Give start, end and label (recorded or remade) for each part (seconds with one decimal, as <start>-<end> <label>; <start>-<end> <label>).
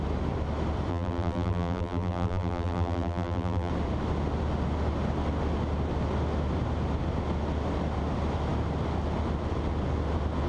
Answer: 0.0-0.9 recorded; 0.9-3.7 remade; 3.7-10.5 recorded